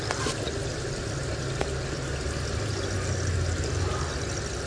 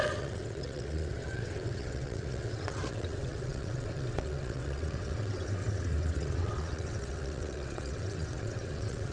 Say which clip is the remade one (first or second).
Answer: second